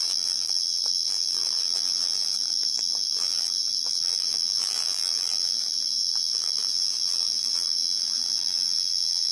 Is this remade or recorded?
remade